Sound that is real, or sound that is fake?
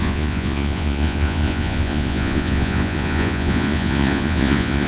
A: fake